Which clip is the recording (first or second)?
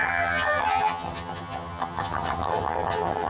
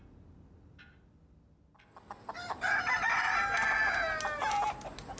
second